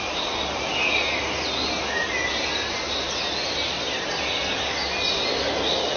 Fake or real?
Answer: real